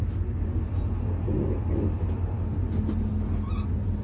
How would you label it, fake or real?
real